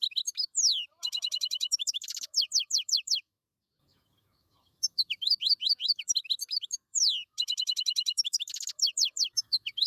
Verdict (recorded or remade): remade